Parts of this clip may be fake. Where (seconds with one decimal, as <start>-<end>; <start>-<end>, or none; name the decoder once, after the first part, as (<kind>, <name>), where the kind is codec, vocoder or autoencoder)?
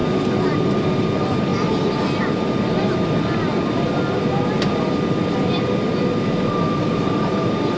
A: none